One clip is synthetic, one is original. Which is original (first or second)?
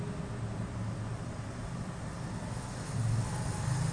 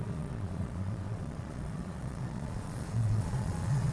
first